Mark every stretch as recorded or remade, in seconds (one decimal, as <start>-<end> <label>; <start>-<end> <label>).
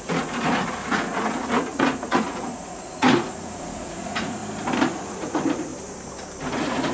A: 0.0-4.4 remade; 4.4-4.9 recorded; 4.9-5.7 remade; 5.7-6.5 recorded; 6.5-6.9 remade